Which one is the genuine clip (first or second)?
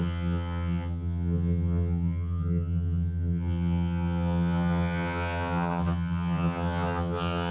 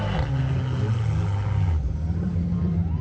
second